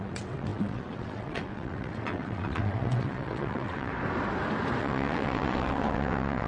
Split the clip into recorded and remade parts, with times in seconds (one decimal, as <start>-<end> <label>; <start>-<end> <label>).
0.0-3.9 remade; 3.9-4.8 recorded; 4.8-6.5 remade